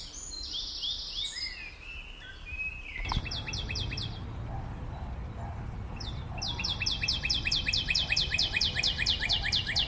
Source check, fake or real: real